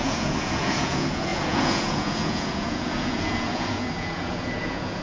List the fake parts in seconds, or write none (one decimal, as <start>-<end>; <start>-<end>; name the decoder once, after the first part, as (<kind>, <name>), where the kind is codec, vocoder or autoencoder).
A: 0.0-5.0 (vocoder, Vocos)